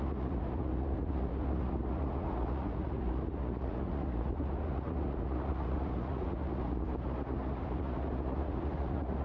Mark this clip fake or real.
fake